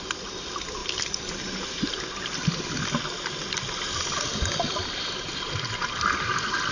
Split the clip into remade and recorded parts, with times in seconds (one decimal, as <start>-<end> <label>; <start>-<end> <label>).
0.0-6.7 recorded